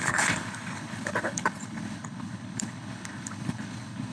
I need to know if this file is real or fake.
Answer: fake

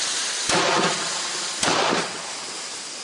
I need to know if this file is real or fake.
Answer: real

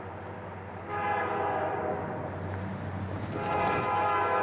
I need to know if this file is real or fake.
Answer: real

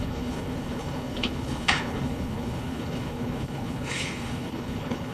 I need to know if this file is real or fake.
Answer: fake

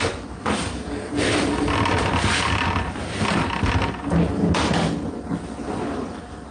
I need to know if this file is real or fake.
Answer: real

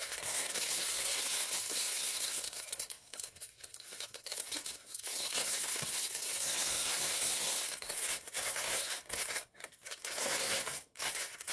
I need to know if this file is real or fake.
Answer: fake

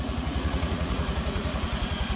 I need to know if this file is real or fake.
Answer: fake